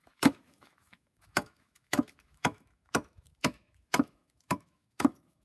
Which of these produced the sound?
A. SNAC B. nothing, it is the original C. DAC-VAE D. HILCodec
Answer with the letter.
C